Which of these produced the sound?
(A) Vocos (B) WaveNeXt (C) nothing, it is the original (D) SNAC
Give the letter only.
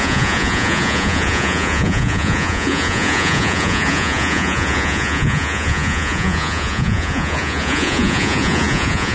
A